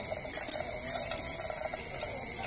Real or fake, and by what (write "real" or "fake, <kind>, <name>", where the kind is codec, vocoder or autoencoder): real